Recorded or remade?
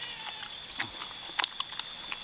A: recorded